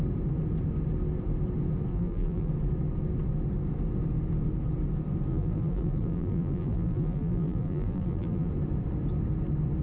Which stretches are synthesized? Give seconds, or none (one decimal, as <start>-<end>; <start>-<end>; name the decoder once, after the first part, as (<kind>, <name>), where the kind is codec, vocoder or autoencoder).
1.9-2.5 (vocoder, BigVGAN v2); 5.3-8.5